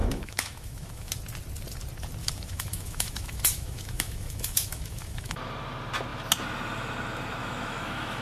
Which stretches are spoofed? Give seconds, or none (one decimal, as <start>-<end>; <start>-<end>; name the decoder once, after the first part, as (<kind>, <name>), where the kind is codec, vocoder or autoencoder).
0.0-1.1 (autoencoder, DAC-VAE); 2.2-5.4; 7.4-8.2